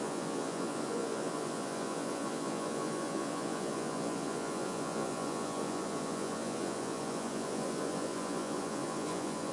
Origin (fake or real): fake